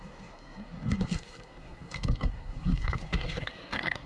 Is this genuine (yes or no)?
no